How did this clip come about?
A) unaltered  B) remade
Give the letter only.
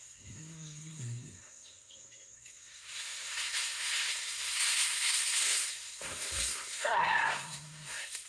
B